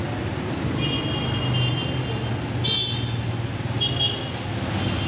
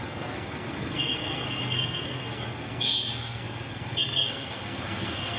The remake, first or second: second